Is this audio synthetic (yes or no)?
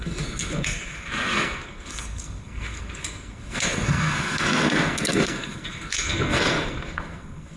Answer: yes